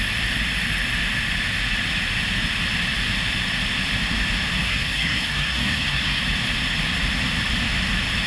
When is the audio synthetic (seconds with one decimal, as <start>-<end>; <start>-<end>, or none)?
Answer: 4.6-6.2